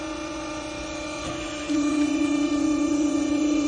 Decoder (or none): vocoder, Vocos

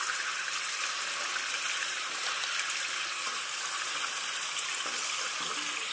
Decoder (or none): none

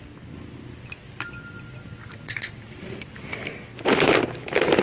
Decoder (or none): none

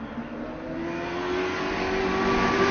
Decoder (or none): none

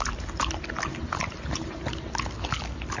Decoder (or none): none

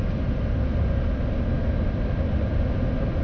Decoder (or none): none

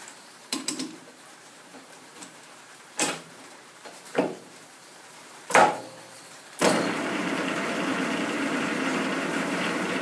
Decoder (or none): vocoder, BigVGAN v2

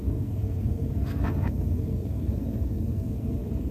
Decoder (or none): codec, SNAC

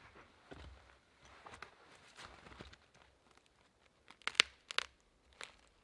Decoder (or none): none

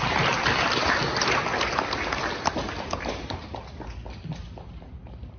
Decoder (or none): none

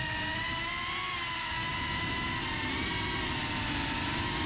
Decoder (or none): none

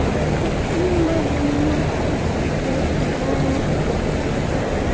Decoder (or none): none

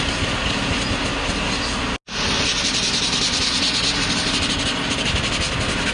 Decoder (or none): none